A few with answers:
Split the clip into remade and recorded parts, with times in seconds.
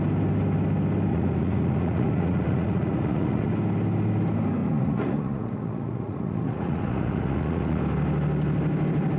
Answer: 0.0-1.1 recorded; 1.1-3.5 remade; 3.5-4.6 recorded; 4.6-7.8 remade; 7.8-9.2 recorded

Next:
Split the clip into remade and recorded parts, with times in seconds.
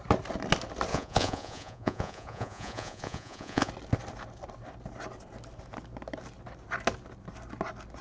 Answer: 0.0-0.9 recorded; 0.9-3.7 remade; 3.7-8.0 recorded